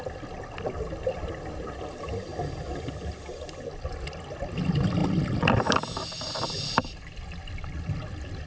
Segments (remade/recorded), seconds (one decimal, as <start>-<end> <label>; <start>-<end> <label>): 0.0-8.5 recorded